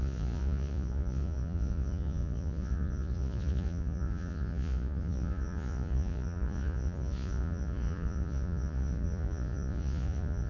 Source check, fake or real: fake